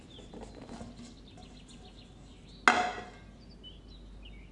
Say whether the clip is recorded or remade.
recorded